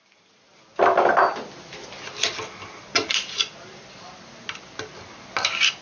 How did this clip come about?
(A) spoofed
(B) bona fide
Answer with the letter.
B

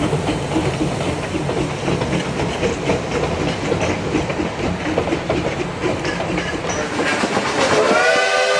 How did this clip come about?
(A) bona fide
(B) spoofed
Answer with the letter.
A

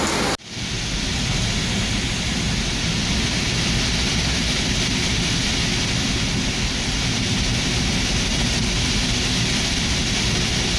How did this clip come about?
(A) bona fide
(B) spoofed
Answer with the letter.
A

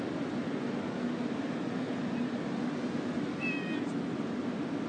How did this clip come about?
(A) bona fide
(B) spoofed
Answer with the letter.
A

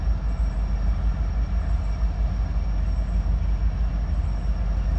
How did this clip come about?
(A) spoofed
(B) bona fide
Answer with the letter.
B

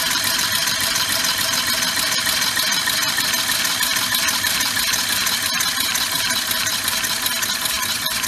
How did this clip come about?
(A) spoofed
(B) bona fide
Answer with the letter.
B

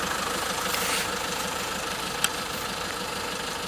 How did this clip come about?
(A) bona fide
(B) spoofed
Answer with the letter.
B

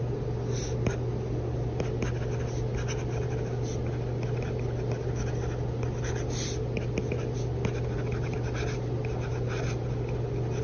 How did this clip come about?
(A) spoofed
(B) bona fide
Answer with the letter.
B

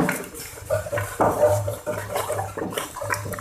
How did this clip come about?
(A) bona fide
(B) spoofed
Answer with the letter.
B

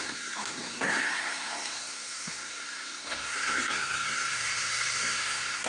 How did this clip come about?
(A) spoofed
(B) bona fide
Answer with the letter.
A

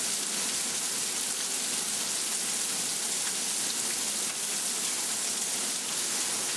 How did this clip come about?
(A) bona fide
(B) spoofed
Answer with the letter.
A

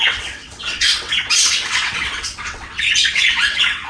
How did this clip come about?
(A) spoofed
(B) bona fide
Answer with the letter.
A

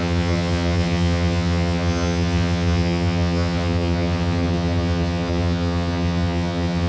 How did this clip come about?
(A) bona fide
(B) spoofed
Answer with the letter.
B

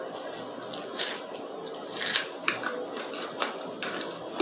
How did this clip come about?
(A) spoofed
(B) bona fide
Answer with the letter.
B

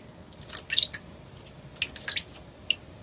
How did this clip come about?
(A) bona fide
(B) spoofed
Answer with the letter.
A